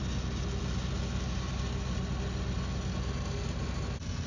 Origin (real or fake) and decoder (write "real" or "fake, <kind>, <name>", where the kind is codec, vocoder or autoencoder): real